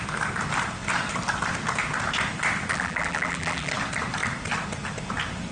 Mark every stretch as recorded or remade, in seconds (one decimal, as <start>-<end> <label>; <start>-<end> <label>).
0.0-2.7 recorded; 2.7-3.7 remade; 3.7-5.5 recorded

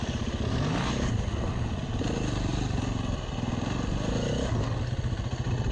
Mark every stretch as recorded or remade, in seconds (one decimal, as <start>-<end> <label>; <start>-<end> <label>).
0.0-5.7 recorded